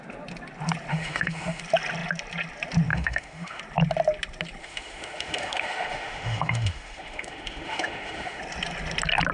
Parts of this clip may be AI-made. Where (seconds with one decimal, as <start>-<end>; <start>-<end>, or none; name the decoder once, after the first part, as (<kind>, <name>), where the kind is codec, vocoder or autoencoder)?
0.9-1.6 (autoencoder, DAC-VAE); 2.9-3.6; 4.6-8.4